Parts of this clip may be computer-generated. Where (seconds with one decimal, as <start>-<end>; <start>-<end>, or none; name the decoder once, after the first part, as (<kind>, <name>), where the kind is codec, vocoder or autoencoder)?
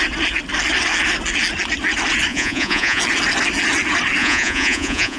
2.3-3.0 (vocoder, Vocos); 4.2-5.2